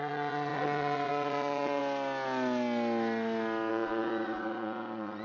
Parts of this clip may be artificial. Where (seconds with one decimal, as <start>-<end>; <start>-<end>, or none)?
0.0-1.8; 3.7-5.2